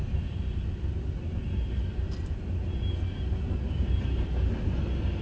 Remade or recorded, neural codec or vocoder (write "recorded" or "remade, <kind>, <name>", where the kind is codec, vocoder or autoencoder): recorded